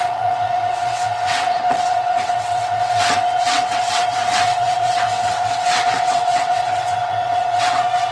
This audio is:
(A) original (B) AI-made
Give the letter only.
B